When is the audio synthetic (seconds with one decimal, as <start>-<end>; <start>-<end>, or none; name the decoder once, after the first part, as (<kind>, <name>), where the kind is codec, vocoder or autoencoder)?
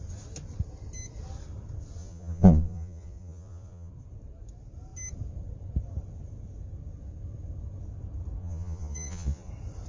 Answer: 2.0-3.9 (vocoder, Vocos); 8.4-9.5